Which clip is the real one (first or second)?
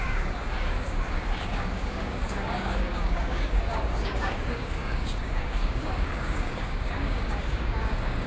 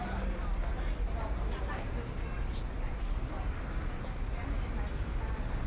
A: second